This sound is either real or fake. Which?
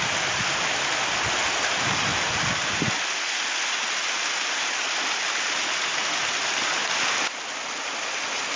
real